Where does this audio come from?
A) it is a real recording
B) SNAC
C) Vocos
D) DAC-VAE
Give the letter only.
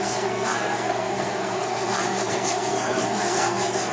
B